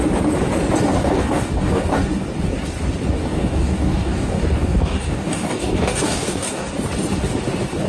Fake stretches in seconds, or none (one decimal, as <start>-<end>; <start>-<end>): 0.9-1.8; 3.2-6.7